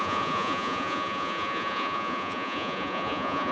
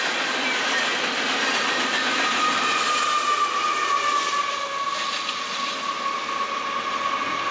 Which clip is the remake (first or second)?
first